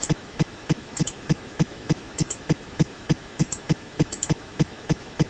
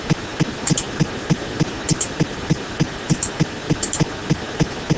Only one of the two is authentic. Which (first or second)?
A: second